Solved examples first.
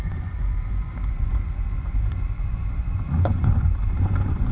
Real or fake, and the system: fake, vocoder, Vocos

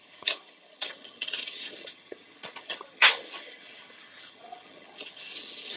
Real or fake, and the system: fake, vocoder, HiFi-GAN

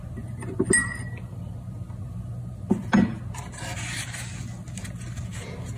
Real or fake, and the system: real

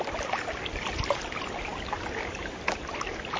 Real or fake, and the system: real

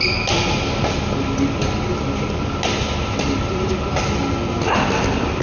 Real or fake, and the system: real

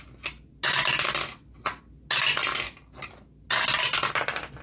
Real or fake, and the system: real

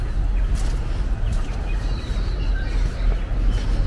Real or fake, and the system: real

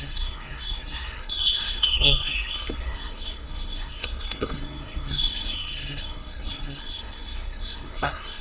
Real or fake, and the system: fake, codec, SNAC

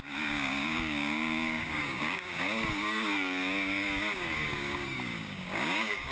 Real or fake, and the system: fake, codec, DAC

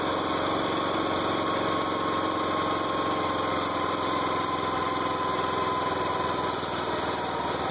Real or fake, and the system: real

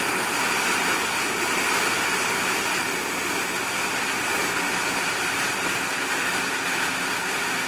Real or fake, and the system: real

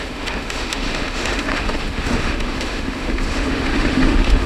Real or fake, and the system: fake, autoencoder, DAC-VAE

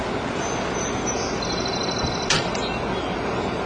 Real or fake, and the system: real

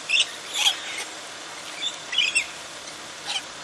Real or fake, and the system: real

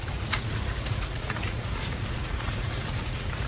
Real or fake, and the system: fake, vocoder, Vocos